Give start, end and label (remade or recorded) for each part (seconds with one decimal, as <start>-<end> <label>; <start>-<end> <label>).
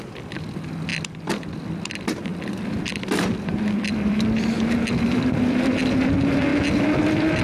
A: 0.0-6.5 remade; 6.5-7.0 recorded; 7.0-7.4 remade